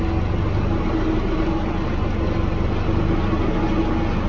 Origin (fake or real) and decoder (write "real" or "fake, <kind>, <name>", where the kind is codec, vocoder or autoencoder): real